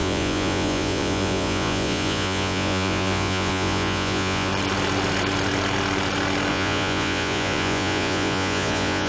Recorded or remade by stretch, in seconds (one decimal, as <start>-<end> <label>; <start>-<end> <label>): 0.0-4.5 remade; 4.5-6.5 recorded; 6.5-9.1 remade